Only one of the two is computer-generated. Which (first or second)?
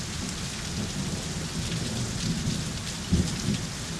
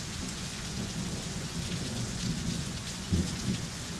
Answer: second